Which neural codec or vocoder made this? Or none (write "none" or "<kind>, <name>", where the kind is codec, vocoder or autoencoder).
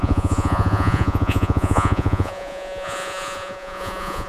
vocoder, Vocos